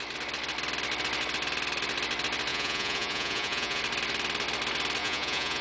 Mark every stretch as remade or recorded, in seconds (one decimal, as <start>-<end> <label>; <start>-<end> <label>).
0.0-2.5 recorded; 2.5-3.8 remade; 3.8-5.0 recorded; 5.0-5.6 remade